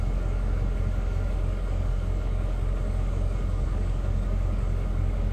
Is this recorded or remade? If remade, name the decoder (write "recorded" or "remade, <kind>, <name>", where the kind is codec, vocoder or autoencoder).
remade, codec, DAC